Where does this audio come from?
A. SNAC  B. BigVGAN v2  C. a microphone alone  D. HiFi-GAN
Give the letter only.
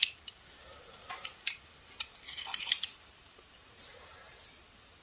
C